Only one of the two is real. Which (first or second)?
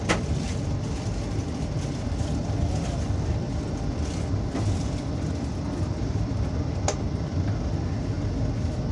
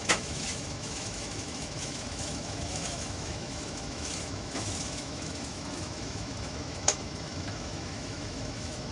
first